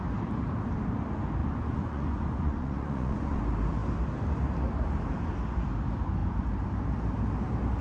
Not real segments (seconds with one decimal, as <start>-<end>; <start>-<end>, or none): 1.4-3.4